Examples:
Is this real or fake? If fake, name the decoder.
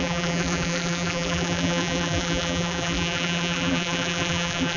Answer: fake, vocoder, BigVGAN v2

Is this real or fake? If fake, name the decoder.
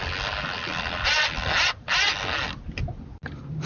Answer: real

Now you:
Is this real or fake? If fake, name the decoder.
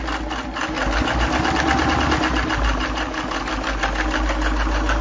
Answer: real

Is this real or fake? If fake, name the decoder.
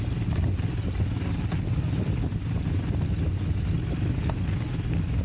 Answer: real